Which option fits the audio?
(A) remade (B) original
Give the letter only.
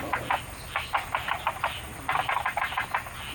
B